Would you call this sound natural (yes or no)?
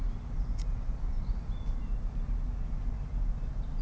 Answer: yes